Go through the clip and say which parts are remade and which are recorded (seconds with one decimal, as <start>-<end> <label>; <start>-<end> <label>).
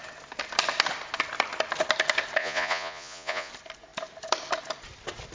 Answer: 0.0-2.4 recorded; 2.4-3.5 remade; 3.5-5.3 recorded